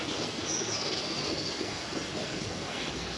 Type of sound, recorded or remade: remade